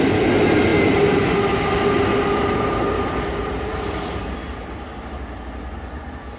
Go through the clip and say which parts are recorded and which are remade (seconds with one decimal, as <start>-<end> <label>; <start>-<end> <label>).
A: 0.0-6.4 recorded